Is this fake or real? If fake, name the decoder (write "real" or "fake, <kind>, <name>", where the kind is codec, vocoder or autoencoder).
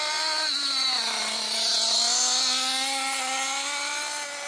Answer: real